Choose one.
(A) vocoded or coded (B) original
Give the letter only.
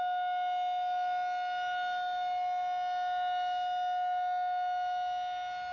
B